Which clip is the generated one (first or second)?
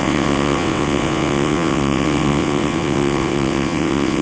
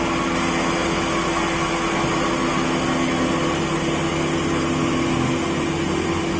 first